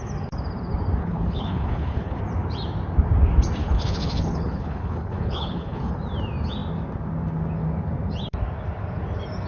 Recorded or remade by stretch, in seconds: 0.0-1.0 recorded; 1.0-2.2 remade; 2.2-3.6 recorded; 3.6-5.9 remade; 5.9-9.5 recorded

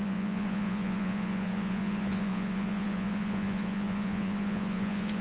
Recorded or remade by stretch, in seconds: 0.0-5.2 remade